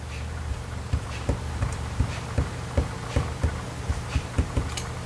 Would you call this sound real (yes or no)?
no